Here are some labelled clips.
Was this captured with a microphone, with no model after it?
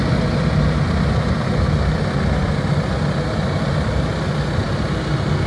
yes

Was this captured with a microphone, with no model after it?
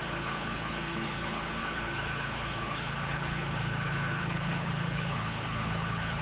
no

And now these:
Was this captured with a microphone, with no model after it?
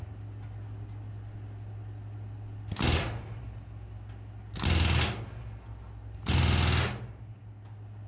yes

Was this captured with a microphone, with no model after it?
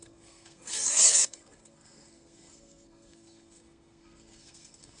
no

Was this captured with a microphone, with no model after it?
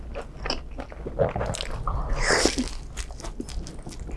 yes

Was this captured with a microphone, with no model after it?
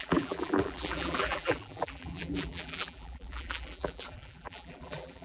no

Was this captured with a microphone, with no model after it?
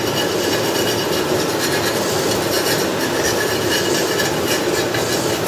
yes